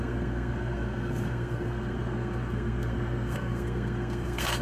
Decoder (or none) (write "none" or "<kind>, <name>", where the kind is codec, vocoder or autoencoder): codec, SNAC